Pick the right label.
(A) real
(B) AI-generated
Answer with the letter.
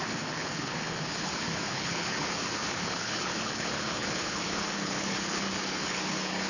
B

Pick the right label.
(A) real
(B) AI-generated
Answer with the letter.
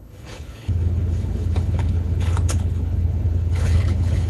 B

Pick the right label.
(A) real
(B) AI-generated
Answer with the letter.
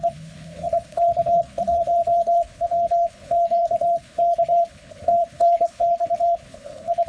B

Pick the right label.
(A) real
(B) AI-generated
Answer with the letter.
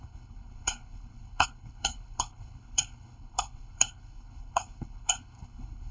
B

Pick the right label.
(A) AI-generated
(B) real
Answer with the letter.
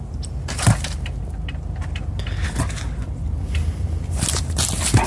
B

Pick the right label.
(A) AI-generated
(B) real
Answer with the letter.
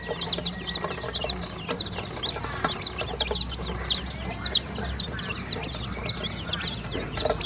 B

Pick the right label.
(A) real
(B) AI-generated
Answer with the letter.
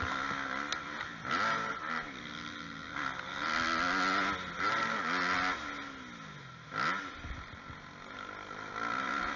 A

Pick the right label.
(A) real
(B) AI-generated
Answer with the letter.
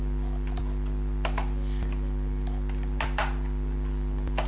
A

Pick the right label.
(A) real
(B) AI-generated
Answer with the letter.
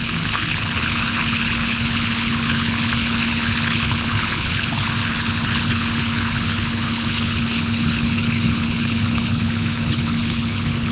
B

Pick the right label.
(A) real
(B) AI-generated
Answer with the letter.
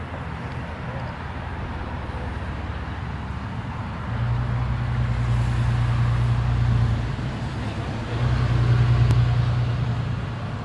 A